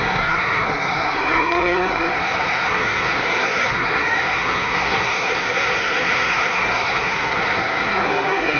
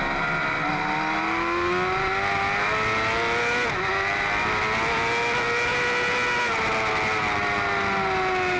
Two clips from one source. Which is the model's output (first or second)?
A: first